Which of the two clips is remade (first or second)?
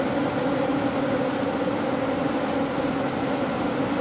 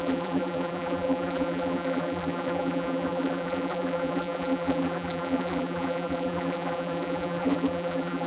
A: second